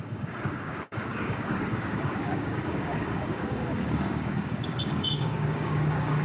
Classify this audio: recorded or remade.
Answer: remade